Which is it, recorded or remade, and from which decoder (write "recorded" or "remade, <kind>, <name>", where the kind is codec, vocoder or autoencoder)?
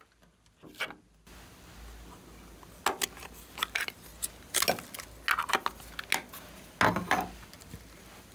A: recorded